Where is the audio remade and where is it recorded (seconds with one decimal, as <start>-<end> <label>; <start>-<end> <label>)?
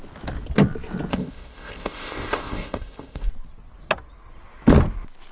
0.0-1.1 recorded; 1.1-3.3 remade; 3.3-5.3 recorded